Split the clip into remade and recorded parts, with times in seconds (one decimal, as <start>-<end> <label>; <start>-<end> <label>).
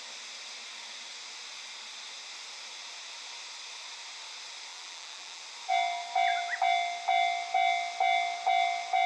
0.0-4.7 recorded; 4.7-5.4 remade; 5.4-9.1 recorded